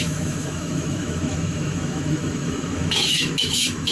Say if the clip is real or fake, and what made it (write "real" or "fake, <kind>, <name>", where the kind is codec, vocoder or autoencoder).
fake, autoencoder, DAC-VAE